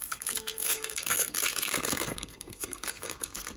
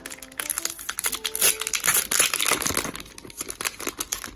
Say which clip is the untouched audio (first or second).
second